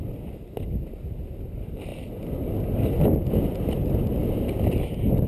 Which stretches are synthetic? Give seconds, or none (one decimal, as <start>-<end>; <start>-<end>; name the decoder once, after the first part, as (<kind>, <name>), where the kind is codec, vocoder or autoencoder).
none